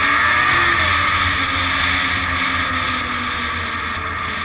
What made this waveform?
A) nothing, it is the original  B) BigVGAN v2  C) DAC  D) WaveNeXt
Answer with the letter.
A